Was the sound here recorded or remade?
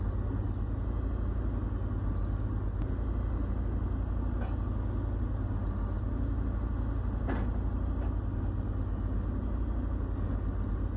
recorded